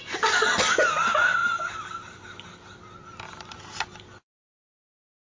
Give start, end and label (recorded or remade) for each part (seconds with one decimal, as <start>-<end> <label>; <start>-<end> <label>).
0.0-5.3 recorded